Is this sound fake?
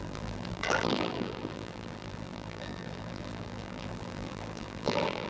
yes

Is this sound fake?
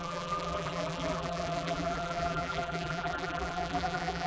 yes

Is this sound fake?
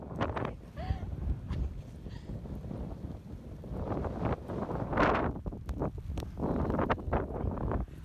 yes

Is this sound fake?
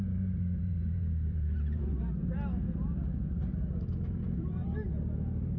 yes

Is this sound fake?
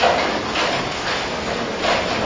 no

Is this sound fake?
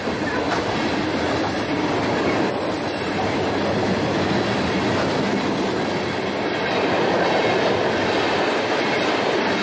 yes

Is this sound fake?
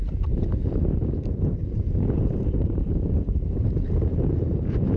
yes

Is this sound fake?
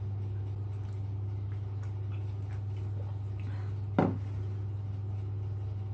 no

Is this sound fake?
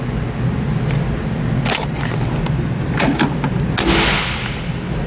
no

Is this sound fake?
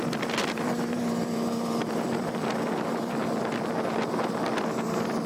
yes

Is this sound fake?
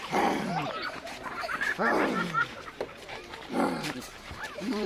yes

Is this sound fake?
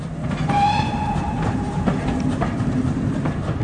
yes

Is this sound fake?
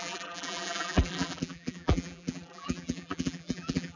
yes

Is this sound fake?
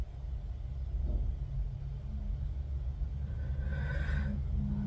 no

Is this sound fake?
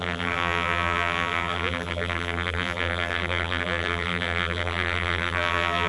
yes